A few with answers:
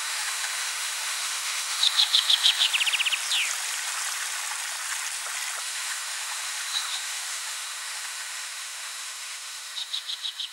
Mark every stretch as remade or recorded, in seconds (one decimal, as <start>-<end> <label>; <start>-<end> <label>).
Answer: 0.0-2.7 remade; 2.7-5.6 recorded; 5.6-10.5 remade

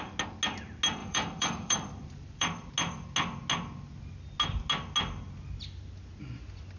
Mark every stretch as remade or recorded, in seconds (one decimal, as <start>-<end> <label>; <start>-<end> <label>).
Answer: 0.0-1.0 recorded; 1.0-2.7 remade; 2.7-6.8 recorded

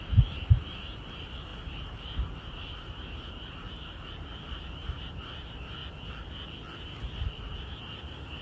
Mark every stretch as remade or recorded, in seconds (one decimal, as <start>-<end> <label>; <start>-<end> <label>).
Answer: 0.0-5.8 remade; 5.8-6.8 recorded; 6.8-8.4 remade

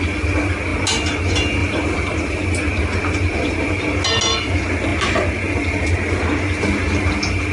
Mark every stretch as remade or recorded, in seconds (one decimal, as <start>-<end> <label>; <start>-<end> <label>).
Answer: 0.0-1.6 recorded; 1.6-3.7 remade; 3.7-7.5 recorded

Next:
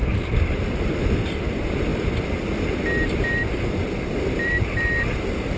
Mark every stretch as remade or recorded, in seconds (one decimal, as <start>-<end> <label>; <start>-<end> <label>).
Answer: 0.0-5.6 recorded

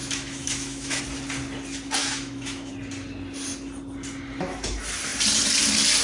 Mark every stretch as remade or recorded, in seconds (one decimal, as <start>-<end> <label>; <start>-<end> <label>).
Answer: 0.0-1.0 remade; 1.0-2.0 recorded; 2.0-2.7 remade; 2.7-6.0 recorded

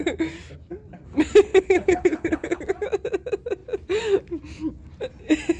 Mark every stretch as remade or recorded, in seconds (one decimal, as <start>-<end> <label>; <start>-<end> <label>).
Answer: 0.0-1.5 recorded; 1.5-2.6 remade; 2.6-5.6 recorded

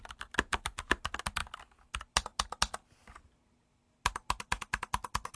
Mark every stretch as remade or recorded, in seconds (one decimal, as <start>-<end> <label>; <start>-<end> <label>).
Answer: 0.0-5.4 recorded